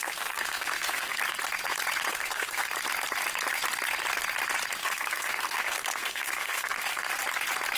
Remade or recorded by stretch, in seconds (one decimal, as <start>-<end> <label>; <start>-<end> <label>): 0.0-1.2 remade; 1.2-2.1 recorded; 2.1-2.7 remade; 2.7-4.8 recorded; 4.8-7.1 remade; 7.1-7.8 recorded